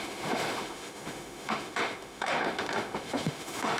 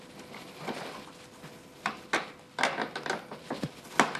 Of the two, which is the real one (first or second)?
second